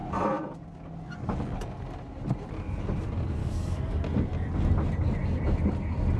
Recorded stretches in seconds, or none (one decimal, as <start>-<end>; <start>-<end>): 0.0-3.4; 4.0-6.2